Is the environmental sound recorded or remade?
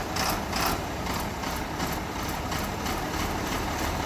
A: recorded